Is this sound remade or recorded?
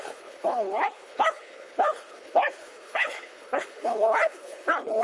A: remade